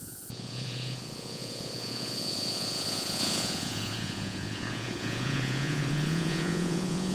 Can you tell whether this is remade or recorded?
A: remade